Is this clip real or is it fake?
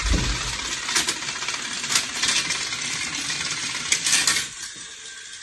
real